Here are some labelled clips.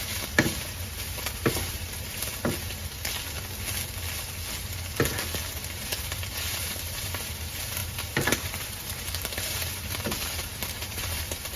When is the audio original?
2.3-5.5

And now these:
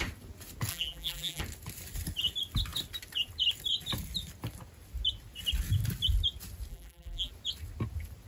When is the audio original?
0.0-0.7; 1.4-6.7; 7.3-8.3